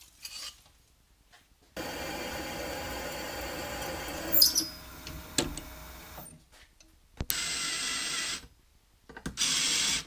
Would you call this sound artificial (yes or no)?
no